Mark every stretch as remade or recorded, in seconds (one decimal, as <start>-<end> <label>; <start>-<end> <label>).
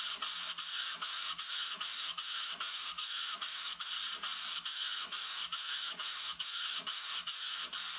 0.0-0.7 recorded; 0.7-3.9 remade; 3.9-4.5 recorded; 4.5-7.6 remade; 7.6-8.0 recorded